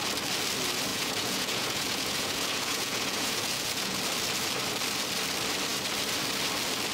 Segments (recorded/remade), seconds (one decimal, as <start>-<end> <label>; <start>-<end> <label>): 0.0-0.9 recorded; 0.9-4.0 remade; 4.0-6.9 recorded